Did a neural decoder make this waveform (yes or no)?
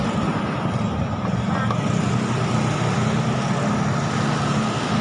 no